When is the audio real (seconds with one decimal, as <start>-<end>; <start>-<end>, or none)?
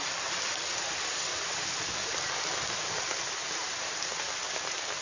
0.0-5.0